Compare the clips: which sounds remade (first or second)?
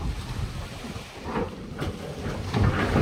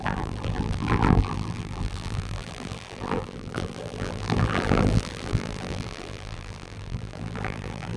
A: second